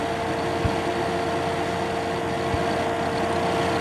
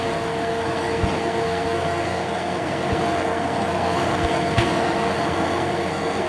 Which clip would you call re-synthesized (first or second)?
second